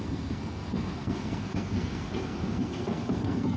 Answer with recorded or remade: remade